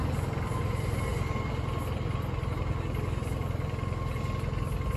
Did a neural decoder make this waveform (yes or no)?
no